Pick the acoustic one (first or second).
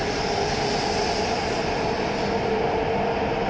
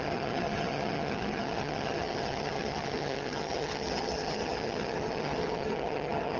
first